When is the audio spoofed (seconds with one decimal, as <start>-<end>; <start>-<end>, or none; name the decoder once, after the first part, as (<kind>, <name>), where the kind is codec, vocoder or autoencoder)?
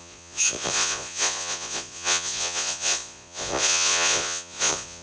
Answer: 0.0-5.0 (vocoder, Vocos)